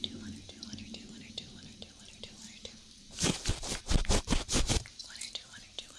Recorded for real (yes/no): no